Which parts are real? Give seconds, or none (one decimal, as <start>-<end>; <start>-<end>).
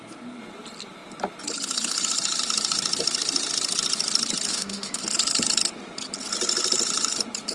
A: 0.0-4.5; 5.0-7.5